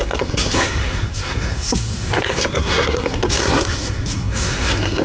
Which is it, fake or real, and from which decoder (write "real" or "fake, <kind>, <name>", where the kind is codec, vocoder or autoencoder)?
fake, codec, SNAC